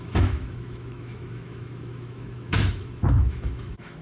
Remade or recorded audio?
remade